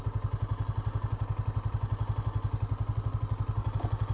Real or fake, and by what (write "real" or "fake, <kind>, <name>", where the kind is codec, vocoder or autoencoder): real